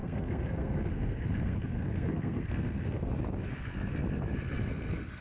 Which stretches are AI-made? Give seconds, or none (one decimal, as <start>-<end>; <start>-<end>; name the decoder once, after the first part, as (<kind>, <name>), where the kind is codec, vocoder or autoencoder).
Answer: 0.0-3.1 (codec, SNAC)